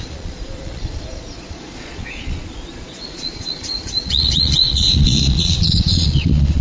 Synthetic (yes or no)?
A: yes